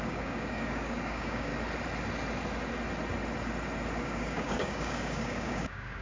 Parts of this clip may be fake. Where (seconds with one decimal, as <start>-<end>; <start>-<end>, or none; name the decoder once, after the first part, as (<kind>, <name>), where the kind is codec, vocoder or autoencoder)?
0.0-1.5 (codec, DAC); 4.0-6.0